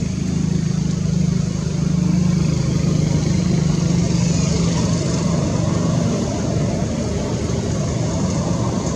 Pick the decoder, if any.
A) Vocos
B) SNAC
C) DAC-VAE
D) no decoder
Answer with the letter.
D